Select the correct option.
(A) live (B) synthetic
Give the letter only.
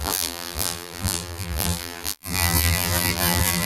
B